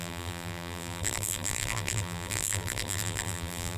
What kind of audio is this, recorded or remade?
remade